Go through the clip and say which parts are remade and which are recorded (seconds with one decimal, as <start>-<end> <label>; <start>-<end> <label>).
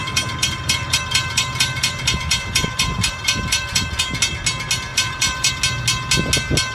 0.0-4.0 remade; 4.0-4.9 recorded; 4.9-5.5 remade; 5.5-6.7 recorded